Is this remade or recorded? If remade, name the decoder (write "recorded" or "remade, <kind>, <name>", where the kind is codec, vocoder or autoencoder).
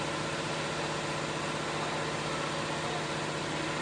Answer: recorded